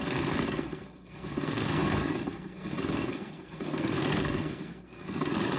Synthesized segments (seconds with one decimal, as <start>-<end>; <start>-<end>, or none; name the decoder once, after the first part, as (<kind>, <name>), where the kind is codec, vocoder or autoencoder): 0.0-5.6 (codec, SNAC)